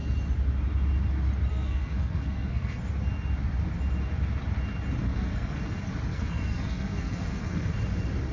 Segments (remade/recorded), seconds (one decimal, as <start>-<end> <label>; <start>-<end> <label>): 0.0-1.5 recorded; 1.5-2.8 remade; 2.8-5.0 recorded; 5.0-5.6 remade; 5.6-6.1 recorded; 6.1-7.7 remade; 7.7-8.3 recorded